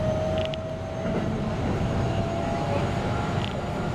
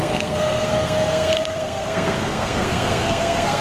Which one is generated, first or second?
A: second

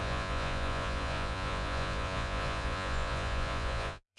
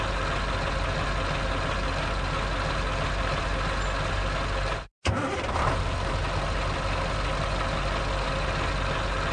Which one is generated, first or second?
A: first